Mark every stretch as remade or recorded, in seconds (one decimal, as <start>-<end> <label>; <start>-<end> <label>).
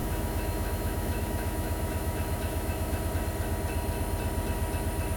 0.0-3.1 remade; 3.1-5.2 recorded